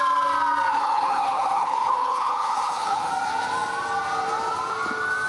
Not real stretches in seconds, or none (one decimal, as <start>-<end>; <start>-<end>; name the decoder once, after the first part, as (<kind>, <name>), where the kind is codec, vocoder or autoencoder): 0.7-3.1 (codec, HILCodec)